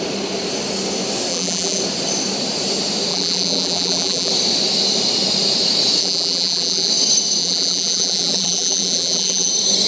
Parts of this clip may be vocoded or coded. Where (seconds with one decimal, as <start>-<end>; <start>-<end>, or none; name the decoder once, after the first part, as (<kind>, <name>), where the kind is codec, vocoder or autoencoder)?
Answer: 1.3-1.8 (vocoder, BigVGAN v2); 3.1-4.3; 6.0-6.9; 7.4-9.5